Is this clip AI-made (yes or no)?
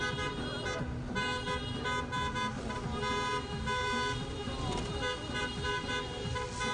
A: no